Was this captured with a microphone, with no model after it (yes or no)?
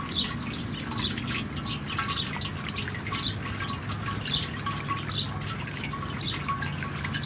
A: yes